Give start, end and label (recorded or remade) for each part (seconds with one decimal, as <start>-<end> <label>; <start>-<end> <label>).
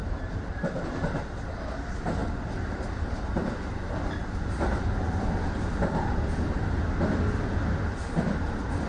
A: 0.0-4.2 remade; 4.2-8.9 recorded